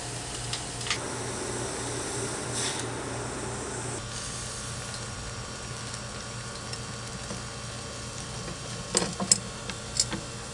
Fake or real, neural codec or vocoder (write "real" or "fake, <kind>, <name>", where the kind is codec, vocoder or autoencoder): real